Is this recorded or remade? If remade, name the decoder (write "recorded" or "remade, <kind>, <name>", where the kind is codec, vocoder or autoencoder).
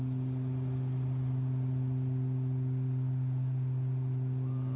recorded